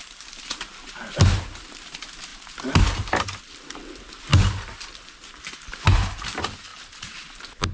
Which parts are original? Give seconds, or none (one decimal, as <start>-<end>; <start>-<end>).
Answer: 0.0-7.7